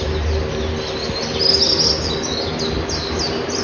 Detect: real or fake real